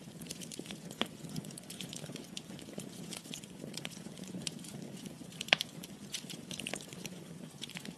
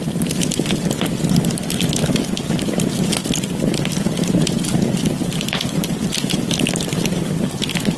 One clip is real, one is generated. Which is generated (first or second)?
first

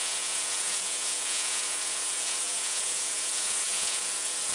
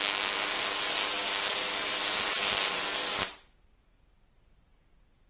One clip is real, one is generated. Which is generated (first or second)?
first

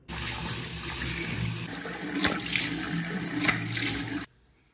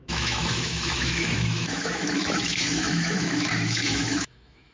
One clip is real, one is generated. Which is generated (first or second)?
second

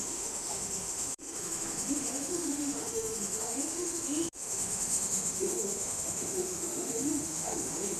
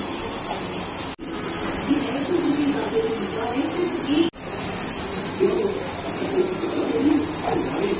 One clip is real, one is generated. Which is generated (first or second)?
first